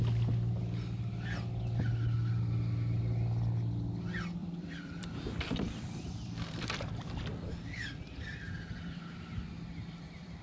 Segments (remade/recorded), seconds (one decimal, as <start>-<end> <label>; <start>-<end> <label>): 0.0-4.4 recorded; 4.4-6.9 remade; 6.9-10.4 recorded